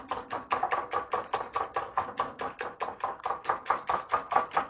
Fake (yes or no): no